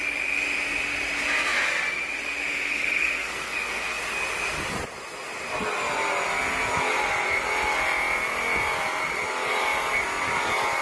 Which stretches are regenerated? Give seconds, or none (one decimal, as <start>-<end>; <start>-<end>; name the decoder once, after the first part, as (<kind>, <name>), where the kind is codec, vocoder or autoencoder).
2.5-4.0 (codec, SNAC)